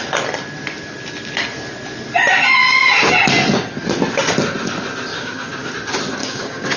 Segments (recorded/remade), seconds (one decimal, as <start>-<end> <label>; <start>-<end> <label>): 0.0-5.1 recorded; 5.1-5.7 remade; 5.7-6.2 recorded; 6.2-6.8 remade